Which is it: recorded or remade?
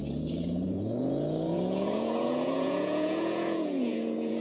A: remade